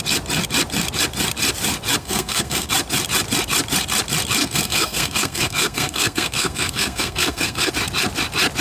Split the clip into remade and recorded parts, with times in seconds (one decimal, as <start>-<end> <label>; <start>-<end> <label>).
0.0-2.0 recorded; 2.0-2.7 remade; 2.7-4.4 recorded; 4.4-7.7 remade; 7.7-8.6 recorded

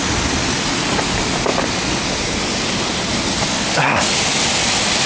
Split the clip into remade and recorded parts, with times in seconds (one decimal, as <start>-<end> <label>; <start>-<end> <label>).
0.0-5.1 recorded

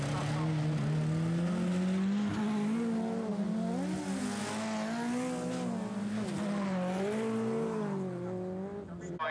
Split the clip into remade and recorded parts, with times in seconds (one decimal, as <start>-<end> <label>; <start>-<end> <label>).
0.0-9.3 recorded

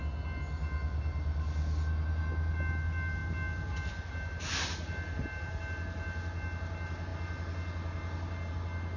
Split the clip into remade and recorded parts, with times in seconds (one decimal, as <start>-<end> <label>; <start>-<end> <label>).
0.0-9.0 recorded

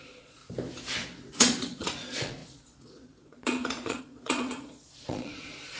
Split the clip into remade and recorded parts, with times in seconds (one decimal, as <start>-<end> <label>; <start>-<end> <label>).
0.0-0.4 remade; 0.4-1.3 recorded; 1.3-5.8 remade